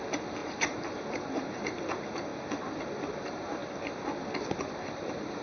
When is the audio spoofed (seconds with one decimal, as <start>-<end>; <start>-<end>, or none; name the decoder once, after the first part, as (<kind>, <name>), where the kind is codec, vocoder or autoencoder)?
0.0-2.3 (vocoder, BigVGAN v2); 3.1-3.6; 4.7-5.4

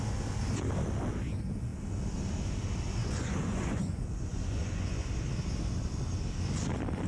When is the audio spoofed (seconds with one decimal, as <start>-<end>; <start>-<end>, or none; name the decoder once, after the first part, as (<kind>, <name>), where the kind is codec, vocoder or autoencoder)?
3.0-5.1 (vocoder, Vocos)

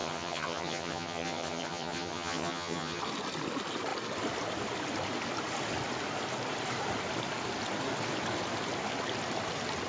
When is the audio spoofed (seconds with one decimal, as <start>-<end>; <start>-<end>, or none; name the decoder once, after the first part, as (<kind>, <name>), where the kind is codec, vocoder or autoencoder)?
0.0-3.0 (vocoder, HiFi-GAN)

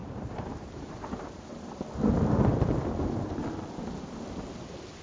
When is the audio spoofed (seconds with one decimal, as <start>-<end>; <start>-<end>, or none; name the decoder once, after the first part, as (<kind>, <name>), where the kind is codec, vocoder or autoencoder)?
0.0-1.7 (vocoder, BigVGAN v2)